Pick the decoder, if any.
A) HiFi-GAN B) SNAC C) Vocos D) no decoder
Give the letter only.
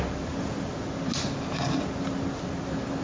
D